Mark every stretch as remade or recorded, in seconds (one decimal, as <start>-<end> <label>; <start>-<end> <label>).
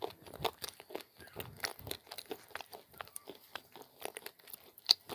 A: 0.0-1.7 recorded; 1.7-5.1 remade